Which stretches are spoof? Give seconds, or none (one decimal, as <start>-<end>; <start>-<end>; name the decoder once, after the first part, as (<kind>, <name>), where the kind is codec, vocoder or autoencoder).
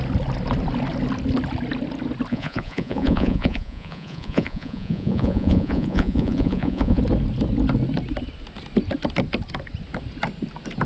2.3-7.0 (vocoder, Vocos)